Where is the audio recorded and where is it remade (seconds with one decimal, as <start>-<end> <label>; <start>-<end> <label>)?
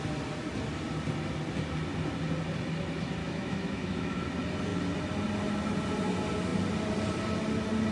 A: 0.0-3.2 recorded; 3.2-4.3 remade; 4.3-7.9 recorded